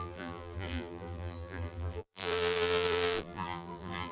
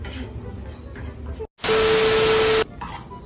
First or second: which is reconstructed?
first